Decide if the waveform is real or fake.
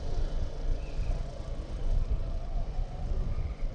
fake